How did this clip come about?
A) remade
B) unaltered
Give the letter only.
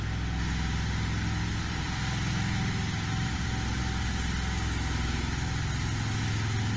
B